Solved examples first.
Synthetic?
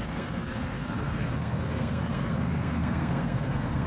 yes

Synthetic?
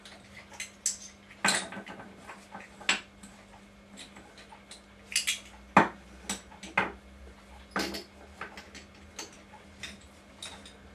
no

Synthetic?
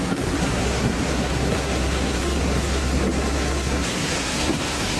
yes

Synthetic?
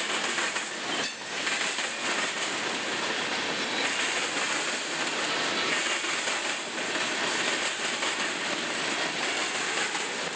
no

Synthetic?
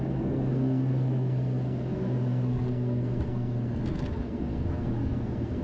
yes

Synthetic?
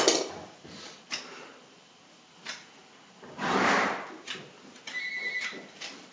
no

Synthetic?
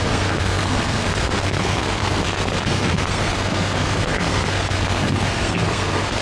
yes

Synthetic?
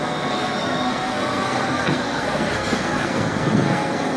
yes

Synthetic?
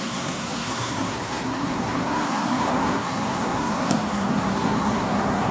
yes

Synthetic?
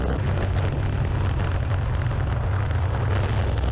no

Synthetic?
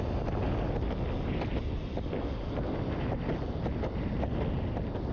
no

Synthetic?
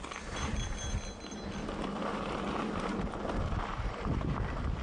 no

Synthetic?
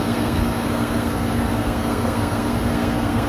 yes